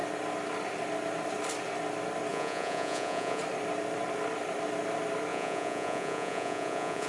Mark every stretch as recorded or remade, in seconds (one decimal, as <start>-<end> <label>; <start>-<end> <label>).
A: 0.0-2.3 recorded; 2.3-3.4 remade; 3.4-5.3 recorded; 5.3-7.1 remade